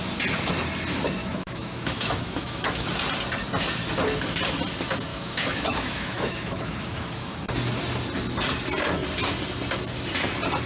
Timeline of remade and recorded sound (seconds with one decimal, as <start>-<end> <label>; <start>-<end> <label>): 0.0-1.2 recorded; 1.2-2.9 remade; 2.9-5.1 recorded; 5.1-7.4 remade; 7.4-10.7 recorded